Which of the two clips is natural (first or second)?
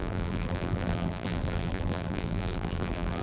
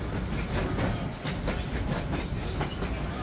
second